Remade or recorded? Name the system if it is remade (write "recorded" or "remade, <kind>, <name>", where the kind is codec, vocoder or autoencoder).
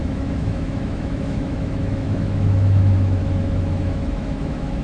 remade, autoencoder, DAC-VAE